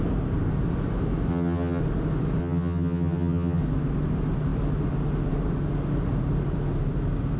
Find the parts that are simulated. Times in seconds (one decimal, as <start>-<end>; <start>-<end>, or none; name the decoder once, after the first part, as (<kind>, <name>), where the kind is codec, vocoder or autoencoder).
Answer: 1.3-1.8 (vocoder, HiFi-GAN); 2.4-3.6